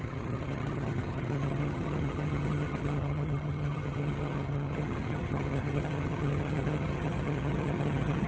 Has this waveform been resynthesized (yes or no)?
yes